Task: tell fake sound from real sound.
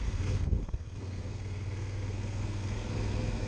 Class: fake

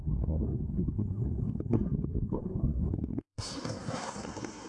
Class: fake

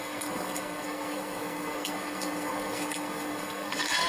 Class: fake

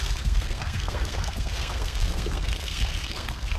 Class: fake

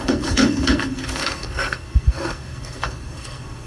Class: fake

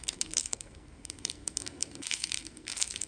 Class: fake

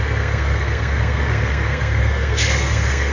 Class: fake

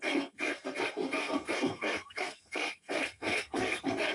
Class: fake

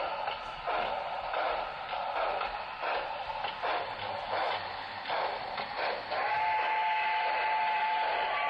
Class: real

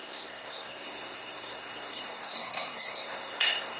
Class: fake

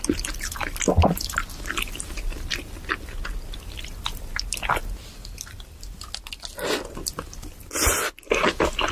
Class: real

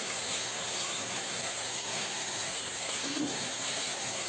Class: fake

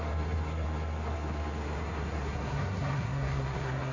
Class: fake